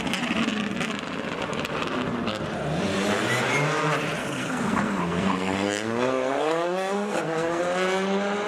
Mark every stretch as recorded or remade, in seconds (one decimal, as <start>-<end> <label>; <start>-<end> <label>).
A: 0.0-4.2 recorded; 4.2-7.6 remade; 7.6-8.5 recorded